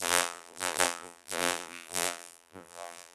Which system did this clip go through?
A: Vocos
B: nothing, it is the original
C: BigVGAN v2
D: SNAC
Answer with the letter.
C